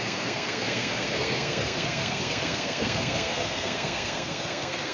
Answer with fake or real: fake